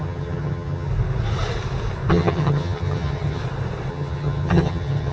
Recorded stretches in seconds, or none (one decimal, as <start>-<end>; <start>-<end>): 0.9-2.1; 3.4-3.9